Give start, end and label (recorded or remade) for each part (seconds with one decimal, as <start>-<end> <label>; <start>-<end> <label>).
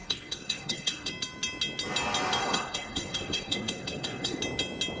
0.0-1.1 remade; 1.1-2.4 recorded; 2.4-4.4 remade; 4.4-5.0 recorded